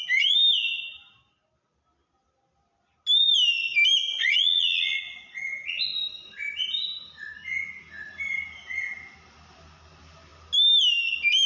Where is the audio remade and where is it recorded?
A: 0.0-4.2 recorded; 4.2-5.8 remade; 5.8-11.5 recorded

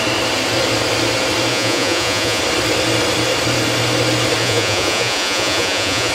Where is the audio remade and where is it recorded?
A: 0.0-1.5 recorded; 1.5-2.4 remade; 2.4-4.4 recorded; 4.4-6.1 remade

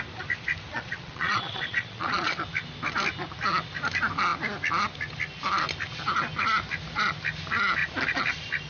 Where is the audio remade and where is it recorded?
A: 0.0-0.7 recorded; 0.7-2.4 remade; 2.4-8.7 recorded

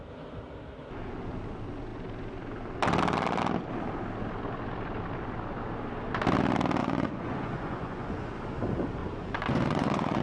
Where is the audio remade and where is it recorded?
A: 0.0-6.8 recorded; 6.8-8.4 remade; 8.4-9.0 recorded; 9.0-10.2 remade